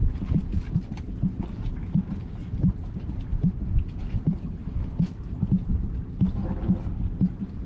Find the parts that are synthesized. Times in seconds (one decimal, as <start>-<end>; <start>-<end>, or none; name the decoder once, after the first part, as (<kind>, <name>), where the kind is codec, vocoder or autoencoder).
none